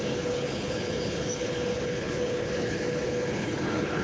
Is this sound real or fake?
fake